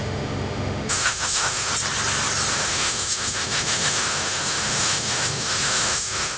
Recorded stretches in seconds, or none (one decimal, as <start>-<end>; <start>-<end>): 1.7-2.5